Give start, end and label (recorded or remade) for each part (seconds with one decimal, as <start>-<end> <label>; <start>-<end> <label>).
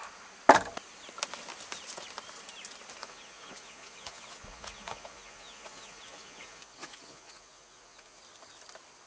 0.0-3.0 recorded; 3.0-8.2 remade; 8.2-9.1 recorded